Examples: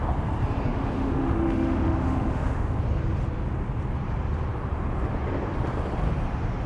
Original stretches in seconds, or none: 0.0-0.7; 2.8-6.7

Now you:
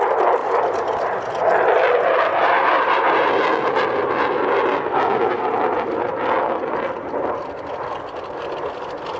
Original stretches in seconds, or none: 0.0-9.2

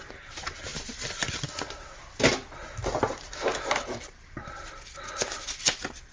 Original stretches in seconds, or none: 0.0-6.1

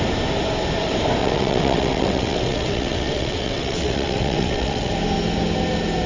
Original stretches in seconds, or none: 0.0-1.2; 4.9-6.1

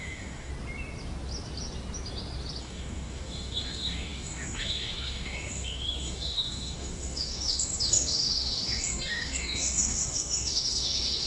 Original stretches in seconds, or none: 0.5-2.6

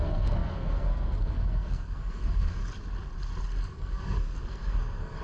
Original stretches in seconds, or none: 2.6-3.7

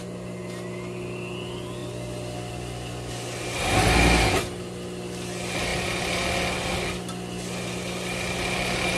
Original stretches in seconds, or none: 0.0-9.0

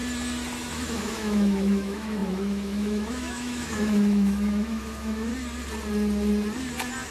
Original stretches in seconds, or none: 0.0-0.7; 5.3-7.1